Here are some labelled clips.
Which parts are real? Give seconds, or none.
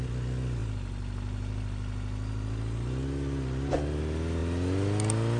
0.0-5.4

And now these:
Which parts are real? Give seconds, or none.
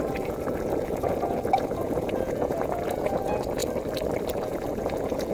3.6-4.3